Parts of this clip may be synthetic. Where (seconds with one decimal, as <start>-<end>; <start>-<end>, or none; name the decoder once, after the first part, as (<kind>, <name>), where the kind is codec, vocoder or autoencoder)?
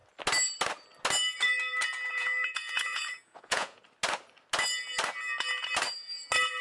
2.1-3.8 (vocoder, Vocos)